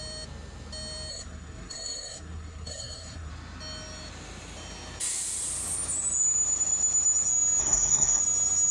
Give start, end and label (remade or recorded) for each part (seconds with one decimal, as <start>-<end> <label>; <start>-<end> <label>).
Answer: 0.0-1.1 recorded; 1.1-3.3 remade; 3.3-7.6 recorded; 7.6-8.2 remade; 8.2-8.7 recorded